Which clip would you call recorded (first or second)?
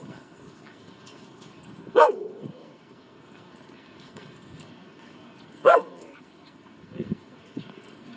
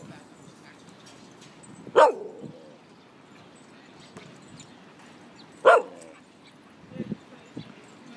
second